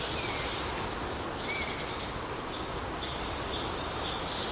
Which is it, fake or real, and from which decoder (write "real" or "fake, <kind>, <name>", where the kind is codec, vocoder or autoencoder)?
real